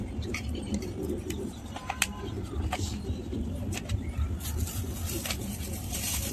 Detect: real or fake real